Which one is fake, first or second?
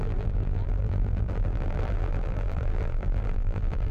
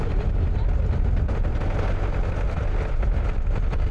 first